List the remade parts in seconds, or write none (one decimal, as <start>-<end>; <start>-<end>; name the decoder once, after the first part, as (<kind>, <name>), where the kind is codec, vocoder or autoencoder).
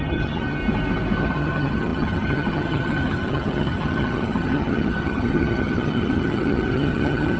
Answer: 0.0-0.6 (vocoder, HiFi-GAN); 1.2-7.4